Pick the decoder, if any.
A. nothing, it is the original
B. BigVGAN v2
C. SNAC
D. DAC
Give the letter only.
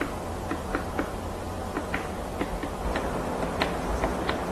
A